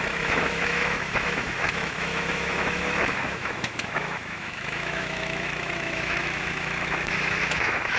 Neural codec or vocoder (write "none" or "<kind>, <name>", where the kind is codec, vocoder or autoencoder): autoencoder, DAC-VAE